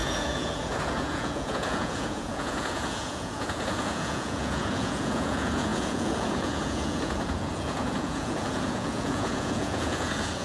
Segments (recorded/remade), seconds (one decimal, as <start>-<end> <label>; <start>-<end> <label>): 0.0-10.4 remade